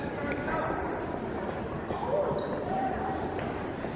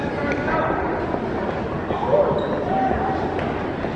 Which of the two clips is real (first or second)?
second